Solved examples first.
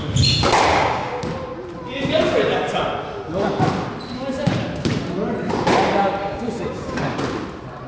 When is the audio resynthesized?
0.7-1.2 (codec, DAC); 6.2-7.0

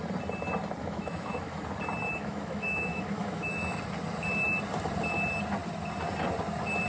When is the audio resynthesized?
0.8-1.6 (autoencoder, DAC-VAE); 2.1-3.8

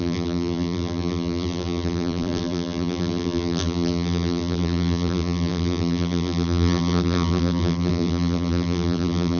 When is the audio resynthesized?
0.0-9.4 (vocoder, BigVGAN v2)

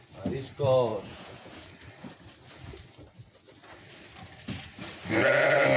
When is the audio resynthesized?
0.9-1.5 (vocoder, Vocos)